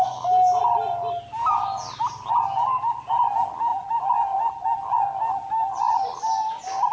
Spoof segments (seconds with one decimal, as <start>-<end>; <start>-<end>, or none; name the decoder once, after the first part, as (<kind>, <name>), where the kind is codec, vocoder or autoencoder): none